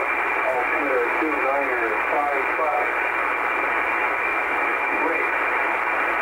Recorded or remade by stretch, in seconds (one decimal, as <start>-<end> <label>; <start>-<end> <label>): 0.0-4.3 recorded; 4.3-5.3 remade; 5.3-6.2 recorded

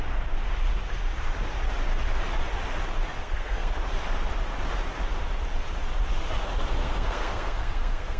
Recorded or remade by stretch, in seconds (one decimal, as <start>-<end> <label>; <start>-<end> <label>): 0.0-3.2 recorded; 3.2-3.8 remade; 3.8-6.8 recorded; 6.8-8.2 remade